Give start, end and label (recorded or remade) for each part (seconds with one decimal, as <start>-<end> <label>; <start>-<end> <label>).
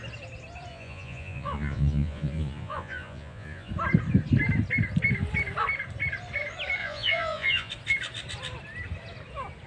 0.0-0.7 recorded; 0.7-3.7 remade; 3.7-6.8 recorded; 6.8-7.7 remade; 7.7-9.7 recorded